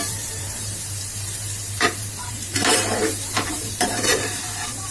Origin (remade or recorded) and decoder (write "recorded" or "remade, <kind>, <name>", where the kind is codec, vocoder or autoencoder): remade, vocoder, BigVGAN v2